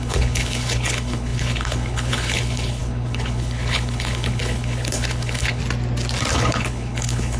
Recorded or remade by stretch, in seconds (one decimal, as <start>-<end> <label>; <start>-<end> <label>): 0.0-5.6 remade; 5.6-6.3 recorded; 6.3-7.4 remade